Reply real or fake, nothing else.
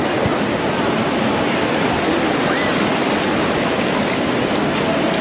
real